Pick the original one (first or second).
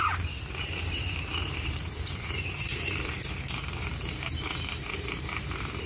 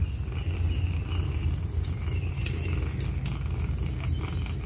second